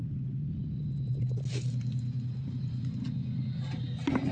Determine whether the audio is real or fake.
real